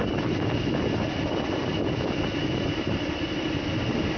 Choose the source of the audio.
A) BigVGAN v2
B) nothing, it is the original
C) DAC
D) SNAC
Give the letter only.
B